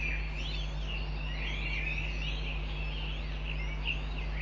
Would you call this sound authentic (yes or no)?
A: yes